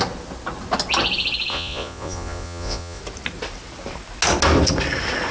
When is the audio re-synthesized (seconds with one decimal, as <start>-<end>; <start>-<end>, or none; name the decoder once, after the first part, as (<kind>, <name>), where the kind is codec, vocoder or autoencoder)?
1.5-3.0 (vocoder, Vocos)